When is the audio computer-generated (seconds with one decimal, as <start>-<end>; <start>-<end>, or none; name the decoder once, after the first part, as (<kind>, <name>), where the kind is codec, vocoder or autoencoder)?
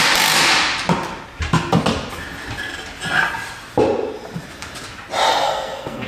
5.3-6.1 (codec, SNAC)